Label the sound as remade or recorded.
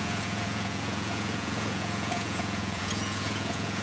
remade